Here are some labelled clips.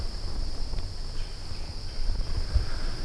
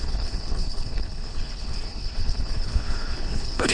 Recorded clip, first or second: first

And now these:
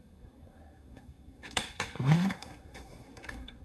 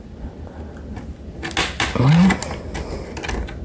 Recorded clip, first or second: second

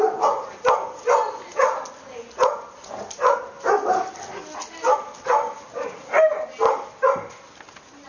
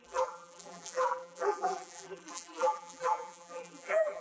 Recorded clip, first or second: first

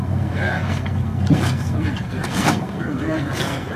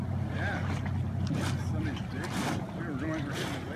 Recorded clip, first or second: second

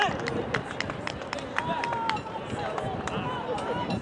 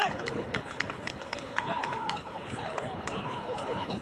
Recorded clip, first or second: first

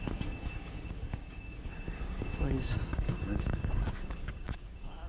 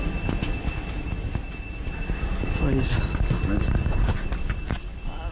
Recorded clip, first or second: second